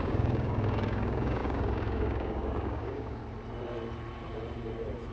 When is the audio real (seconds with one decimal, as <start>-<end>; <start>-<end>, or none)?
3.2-5.1